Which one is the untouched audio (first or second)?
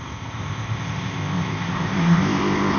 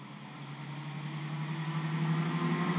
second